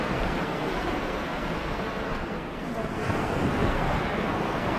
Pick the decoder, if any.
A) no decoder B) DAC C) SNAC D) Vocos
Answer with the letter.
C